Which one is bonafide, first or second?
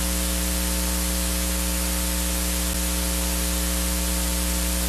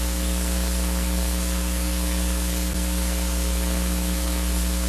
first